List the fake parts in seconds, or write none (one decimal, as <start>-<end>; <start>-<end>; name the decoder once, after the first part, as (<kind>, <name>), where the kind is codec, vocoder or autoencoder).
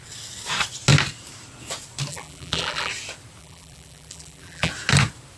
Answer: 2.1-2.9 (vocoder, BigVGAN v2); 3.4-4.7